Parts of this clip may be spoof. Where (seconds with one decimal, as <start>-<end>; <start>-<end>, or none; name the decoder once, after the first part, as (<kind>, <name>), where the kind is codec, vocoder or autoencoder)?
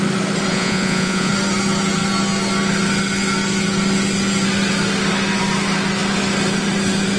0.5-1.3 (vocoder, Vocos)